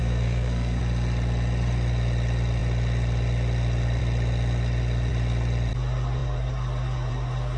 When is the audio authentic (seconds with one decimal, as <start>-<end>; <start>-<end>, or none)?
0.8-7.6